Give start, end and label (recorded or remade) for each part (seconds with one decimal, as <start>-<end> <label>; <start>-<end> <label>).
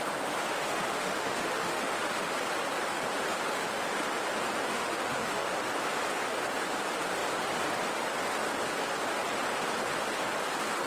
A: 0.0-0.5 recorded; 0.5-2.2 remade; 2.2-4.7 recorded; 4.7-5.5 remade; 5.5-10.9 recorded